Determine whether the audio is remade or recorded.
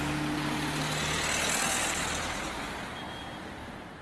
recorded